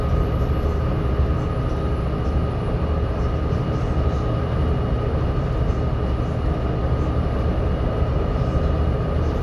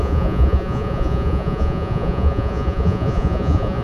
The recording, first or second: first